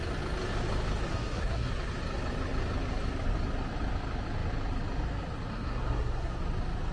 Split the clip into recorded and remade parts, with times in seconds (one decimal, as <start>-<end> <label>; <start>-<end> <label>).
0.0-1.1 recorded; 1.1-1.7 remade; 1.7-5.5 recorded; 5.5-6.4 remade; 6.4-6.9 recorded